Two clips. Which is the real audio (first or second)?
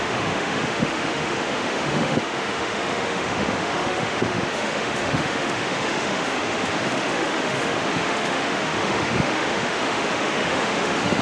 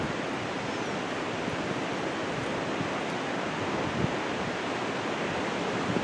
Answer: second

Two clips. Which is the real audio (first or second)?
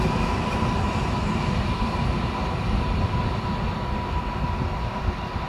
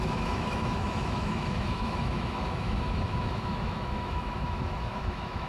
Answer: first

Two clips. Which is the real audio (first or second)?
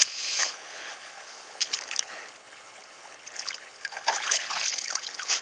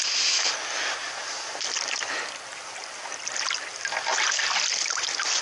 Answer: second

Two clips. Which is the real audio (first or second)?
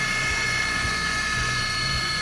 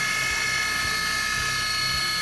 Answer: second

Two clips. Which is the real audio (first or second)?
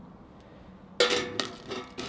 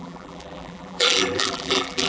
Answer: first